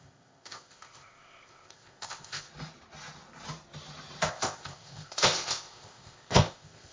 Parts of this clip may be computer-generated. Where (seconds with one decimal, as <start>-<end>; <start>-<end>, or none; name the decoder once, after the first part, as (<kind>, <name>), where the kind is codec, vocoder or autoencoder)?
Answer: 0.0-2.5 (codec, ZipCodec); 4.3-6.9